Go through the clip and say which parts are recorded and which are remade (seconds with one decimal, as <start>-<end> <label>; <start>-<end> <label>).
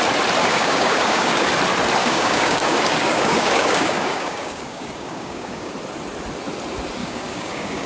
0.0-0.4 recorded; 0.4-1.5 remade; 1.5-2.0 recorded; 2.0-5.7 remade; 5.7-7.0 recorded; 7.0-7.9 remade